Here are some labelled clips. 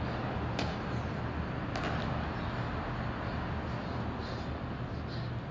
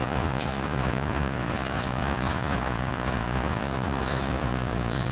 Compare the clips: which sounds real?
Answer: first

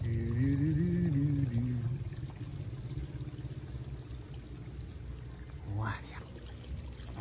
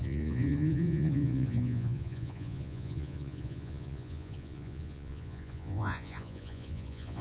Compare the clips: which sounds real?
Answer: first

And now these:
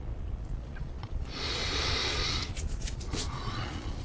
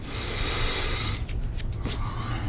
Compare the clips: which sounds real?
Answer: second